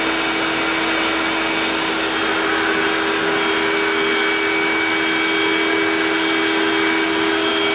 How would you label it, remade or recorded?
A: recorded